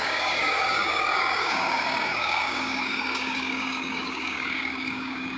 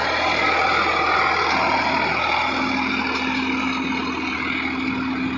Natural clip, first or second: second